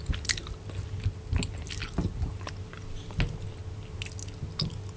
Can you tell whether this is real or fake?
real